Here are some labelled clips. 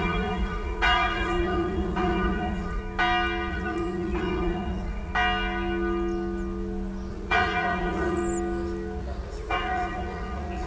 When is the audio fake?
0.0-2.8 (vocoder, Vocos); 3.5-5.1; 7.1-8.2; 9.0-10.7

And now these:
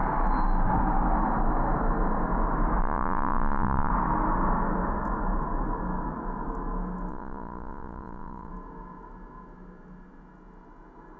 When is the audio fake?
2.8-3.9 (vocoder, Vocos); 7.1-8.5

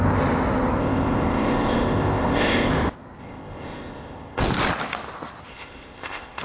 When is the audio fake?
0.8-2.7 (codec, ZipCodec); 3.2-4.4; 5.5-6.4

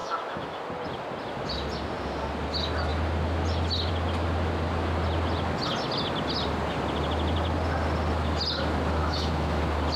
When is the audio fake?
0.0-0.6 (autoencoder, DAC-VAE); 9.0-9.6

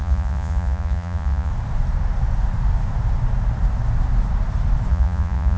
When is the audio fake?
0.0-1.5 (vocoder, Vocos); 4.9-5.6

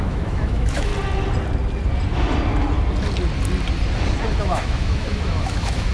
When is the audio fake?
0.0-0.9 (autoencoder, DAC-VAE); 4.4-5.9

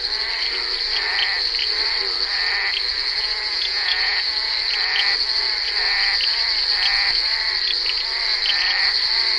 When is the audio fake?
3.1-4.5 (vocoder, Vocos)

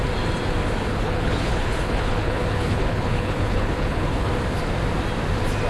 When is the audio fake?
0.9-4.3 (codec, HILCodec)